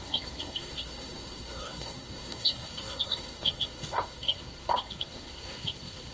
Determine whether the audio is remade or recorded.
remade